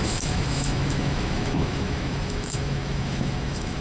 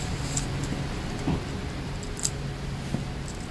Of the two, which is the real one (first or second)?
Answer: second